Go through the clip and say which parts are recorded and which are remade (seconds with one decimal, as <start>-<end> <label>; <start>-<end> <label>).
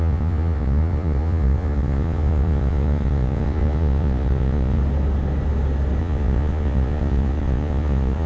0.0-4.8 remade; 4.8-6.0 recorded; 6.0-8.3 remade